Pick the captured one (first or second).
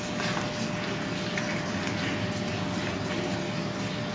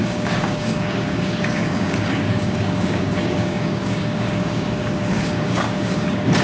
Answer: first